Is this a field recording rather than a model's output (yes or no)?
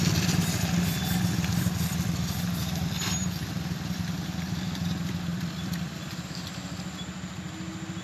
yes